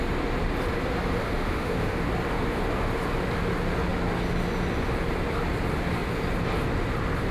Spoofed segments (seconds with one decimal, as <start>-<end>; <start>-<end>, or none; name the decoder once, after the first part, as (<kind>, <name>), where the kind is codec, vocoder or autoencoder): 1.2-2.0 (autoencoder, DAC-VAE)